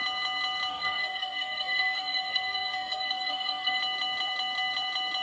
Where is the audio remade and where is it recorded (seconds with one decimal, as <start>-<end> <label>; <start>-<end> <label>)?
0.0-0.7 recorded; 0.7-3.8 remade; 3.8-5.2 recorded